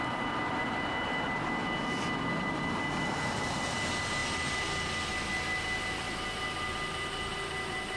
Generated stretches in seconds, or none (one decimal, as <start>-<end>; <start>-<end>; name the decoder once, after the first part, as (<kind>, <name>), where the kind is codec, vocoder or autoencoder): none

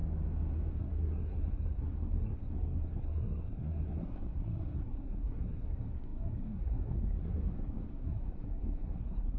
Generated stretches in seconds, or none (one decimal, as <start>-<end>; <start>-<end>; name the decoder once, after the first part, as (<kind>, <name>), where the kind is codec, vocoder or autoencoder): 0.7-9.4 (codec, SNAC)

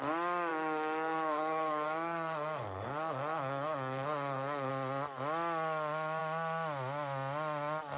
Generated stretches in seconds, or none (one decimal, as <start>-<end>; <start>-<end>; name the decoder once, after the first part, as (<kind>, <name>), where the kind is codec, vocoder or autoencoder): 0.5-4.7 (codec, SNAC)

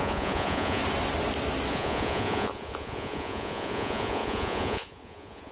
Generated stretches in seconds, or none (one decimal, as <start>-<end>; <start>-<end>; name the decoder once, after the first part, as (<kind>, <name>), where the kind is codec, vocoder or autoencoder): 0.0-0.8 (vocoder, Vocos); 1.7-5.5

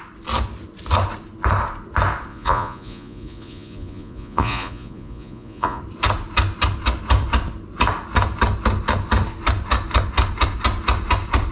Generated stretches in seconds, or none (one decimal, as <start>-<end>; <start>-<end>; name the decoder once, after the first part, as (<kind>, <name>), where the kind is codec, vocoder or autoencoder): 2.3-5.8 (vocoder, Vocos)

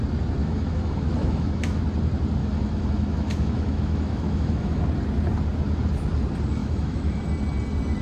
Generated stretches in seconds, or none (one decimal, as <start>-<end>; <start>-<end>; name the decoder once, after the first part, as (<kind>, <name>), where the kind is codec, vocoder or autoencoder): 0.4-1.8 (autoencoder, DAC-VAE); 2.4-4.8; 6.6-7.2

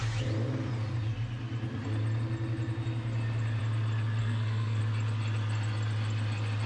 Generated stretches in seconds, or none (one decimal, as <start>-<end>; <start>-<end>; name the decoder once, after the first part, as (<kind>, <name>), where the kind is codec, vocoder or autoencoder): 4.2-4.8 (codec, SNAC)

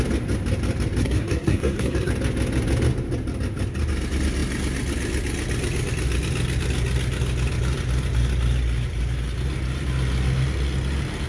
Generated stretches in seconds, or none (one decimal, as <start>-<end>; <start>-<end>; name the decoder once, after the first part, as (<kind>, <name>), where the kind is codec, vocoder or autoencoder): 1.0-2.1 (codec, SNAC)